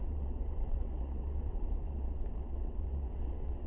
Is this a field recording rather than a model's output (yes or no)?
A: no